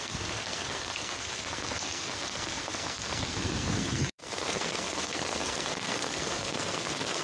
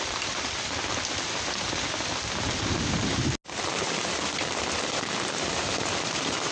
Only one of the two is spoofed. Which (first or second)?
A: first